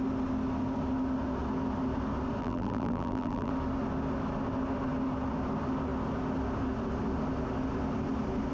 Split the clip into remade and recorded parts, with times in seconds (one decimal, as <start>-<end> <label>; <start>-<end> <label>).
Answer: 0.0-2.4 recorded; 2.4-3.5 remade; 3.5-8.5 recorded